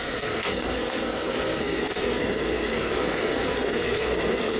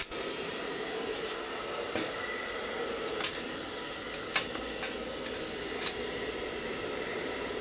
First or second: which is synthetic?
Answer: first